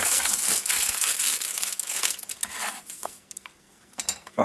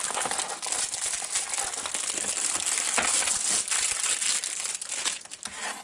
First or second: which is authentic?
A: second